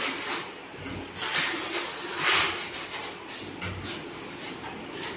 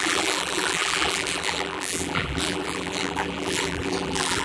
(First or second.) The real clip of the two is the first